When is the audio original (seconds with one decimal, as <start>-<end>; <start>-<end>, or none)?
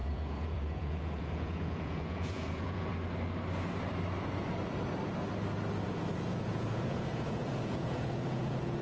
2.9-5.8